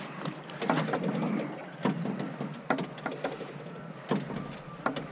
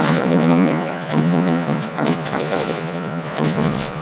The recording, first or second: first